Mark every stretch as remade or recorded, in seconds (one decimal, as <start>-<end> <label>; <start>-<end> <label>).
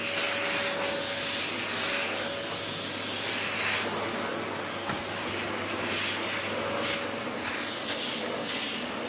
0.0-9.1 recorded